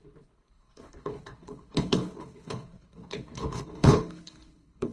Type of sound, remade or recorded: remade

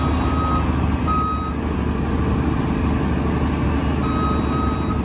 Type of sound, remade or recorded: recorded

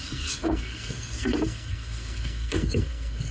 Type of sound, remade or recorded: remade